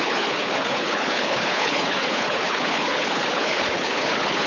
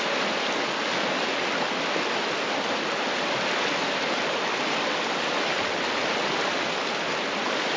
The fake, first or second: first